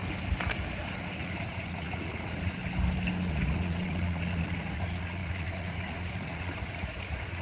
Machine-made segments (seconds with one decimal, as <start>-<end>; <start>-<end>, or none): 0.7-2.6; 3.3-7.4